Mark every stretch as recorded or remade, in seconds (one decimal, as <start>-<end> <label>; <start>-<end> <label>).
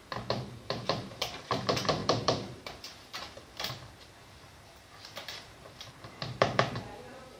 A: 0.0-7.4 remade